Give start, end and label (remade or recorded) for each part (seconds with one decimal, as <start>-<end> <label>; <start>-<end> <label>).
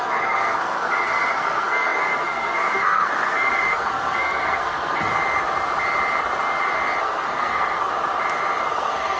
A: 0.0-5.1 remade; 5.1-7.0 recorded; 7.0-7.9 remade; 7.9-8.7 recorded; 8.7-9.2 remade